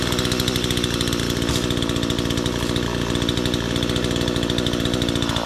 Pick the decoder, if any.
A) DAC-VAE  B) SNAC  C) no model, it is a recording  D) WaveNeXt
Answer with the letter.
C